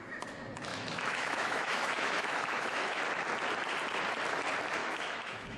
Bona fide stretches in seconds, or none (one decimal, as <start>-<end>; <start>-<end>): 0.0-0.7; 3.0-4.8